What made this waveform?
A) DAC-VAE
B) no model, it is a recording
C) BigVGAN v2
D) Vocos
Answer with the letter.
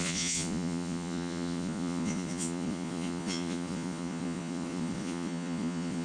D